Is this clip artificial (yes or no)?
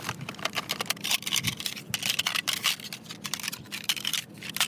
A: no